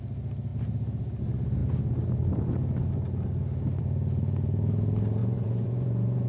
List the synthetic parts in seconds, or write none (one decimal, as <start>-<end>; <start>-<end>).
5.2-6.3